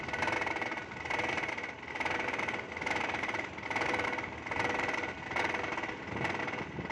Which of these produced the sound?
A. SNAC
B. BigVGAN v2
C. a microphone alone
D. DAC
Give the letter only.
B